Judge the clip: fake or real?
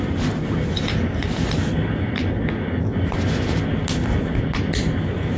real